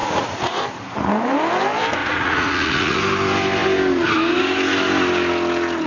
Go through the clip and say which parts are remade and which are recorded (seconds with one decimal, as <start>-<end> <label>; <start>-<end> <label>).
0.0-0.6 remade; 0.6-2.0 recorded; 2.0-3.0 remade; 3.0-5.9 recorded